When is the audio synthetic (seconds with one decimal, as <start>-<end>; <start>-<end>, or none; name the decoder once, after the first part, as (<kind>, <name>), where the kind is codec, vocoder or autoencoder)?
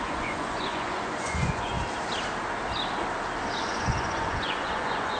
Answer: 0.0-1.8 (vocoder, Vocos); 3.6-5.2